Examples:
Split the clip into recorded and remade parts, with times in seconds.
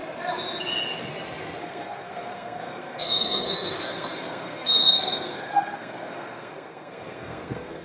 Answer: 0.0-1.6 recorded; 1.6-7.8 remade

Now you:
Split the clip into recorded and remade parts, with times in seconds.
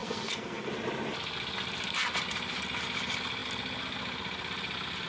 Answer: 0.0-0.7 remade; 0.7-5.1 recorded